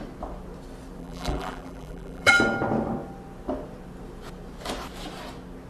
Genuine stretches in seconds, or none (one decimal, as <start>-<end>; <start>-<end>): 0.0-1.0; 2.3-5.7